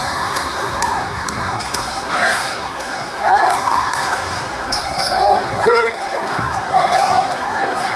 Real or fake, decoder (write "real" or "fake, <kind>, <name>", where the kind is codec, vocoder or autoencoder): fake, codec, SNAC